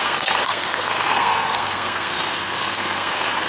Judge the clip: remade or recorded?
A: remade